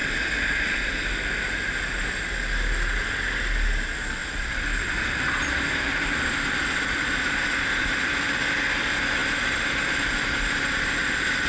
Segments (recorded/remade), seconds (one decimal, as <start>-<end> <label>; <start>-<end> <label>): 0.0-0.9 remade; 0.9-4.2 recorded; 4.2-8.1 remade; 8.1-9.2 recorded; 9.2-10.4 remade; 10.4-11.5 recorded